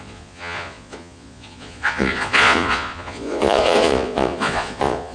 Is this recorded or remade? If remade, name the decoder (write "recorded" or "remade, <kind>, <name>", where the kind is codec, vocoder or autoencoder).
remade, vocoder, Vocos